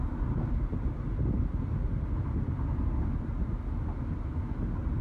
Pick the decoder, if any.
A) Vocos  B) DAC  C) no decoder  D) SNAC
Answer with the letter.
C